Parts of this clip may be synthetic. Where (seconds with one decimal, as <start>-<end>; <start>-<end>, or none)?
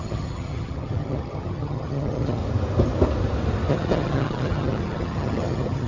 0.0-2.4; 3.7-5.9